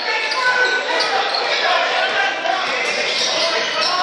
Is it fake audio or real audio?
real